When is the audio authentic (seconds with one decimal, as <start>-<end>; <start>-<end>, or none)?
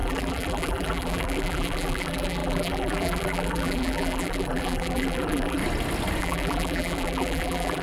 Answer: 5.6-6.2